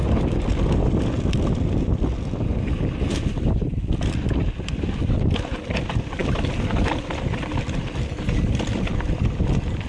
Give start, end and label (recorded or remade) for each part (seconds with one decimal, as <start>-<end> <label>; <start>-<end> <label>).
0.0-9.9 recorded